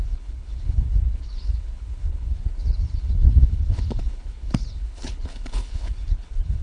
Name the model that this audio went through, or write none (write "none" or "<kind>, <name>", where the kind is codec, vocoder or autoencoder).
codec, HILCodec